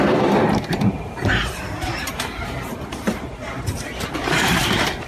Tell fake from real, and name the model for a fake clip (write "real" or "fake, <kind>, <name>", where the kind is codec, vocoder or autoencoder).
fake, vocoder, BigVGAN v2